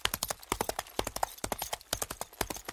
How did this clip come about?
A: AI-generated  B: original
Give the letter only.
B